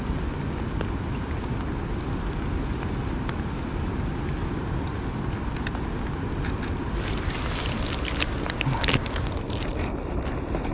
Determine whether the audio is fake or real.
real